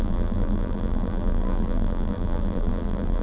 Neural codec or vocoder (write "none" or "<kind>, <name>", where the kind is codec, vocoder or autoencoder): vocoder, BigVGAN v2